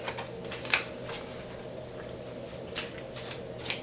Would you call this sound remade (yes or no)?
no